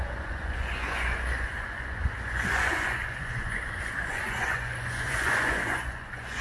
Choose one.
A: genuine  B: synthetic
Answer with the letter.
B